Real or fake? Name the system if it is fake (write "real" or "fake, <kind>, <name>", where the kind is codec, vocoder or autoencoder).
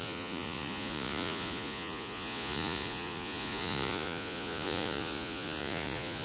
fake, vocoder, Vocos